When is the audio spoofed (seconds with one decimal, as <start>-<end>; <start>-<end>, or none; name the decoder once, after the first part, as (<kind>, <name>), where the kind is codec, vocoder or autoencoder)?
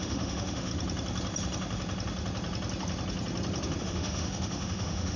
0.0-0.7 (autoencoder, DAC-VAE); 3.8-5.2